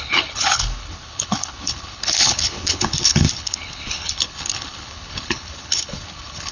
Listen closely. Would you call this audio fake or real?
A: fake